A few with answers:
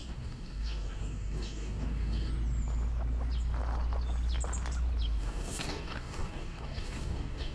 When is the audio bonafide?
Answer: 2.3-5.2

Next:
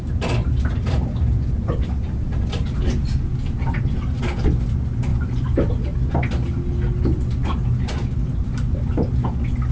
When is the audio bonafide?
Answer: 0.0-3.4; 4.2-5.1; 5.7-9.7

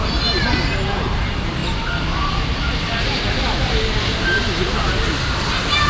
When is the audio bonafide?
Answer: 0.0-5.9

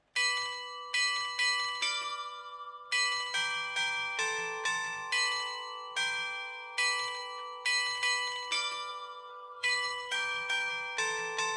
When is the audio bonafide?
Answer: 0.0-9.3; 10.7-11.6

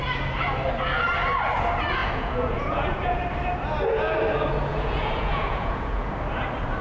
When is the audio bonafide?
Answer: 0.0-2.0; 3.2-4.7; 6.1-6.8

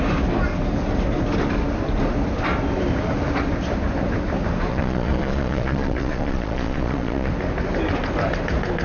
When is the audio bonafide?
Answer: 0.0-4.7; 7.3-8.8

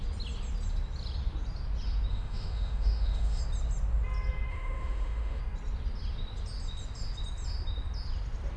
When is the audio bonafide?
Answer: 0.0-2.1; 3.4-4.5; 5.4-8.6